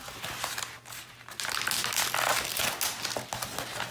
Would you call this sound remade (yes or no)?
no